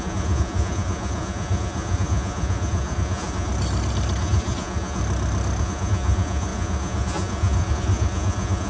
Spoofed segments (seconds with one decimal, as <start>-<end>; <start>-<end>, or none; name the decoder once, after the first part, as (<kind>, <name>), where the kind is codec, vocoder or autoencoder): 0.0-3.5 (vocoder, Vocos); 4.2-5.0; 5.6-8.7